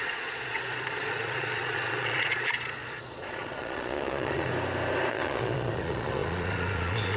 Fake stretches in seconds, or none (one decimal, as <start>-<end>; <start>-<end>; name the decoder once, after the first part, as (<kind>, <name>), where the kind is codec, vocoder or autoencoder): 0.0-4.5 (vocoder, Vocos); 5.1-7.2